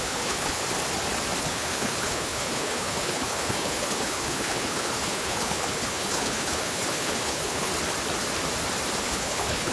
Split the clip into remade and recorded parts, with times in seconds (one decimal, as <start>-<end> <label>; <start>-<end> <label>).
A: 0.0-0.6 remade; 0.6-1.4 recorded; 1.4-7.7 remade; 7.7-9.0 recorded; 9.0-9.7 remade